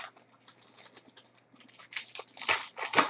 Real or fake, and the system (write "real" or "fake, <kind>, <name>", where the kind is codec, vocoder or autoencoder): real